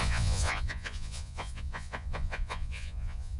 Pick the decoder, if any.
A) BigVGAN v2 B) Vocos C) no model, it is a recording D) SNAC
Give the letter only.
B